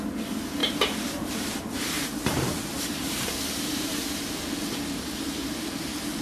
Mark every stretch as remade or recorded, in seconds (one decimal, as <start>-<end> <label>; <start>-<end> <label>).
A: 0.0-0.6 recorded; 0.6-4.3 remade; 4.3-6.2 recorded